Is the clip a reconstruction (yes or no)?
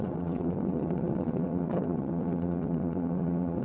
yes